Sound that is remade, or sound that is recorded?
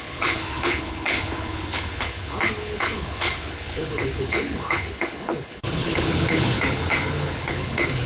remade